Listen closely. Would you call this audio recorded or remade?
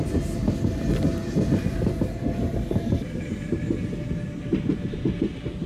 recorded